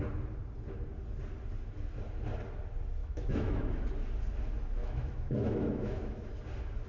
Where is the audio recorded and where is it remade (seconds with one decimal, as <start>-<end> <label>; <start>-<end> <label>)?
0.0-3.0 recorded; 3.0-3.7 remade; 3.7-4.8 recorded; 4.8-6.3 remade; 6.3-6.9 recorded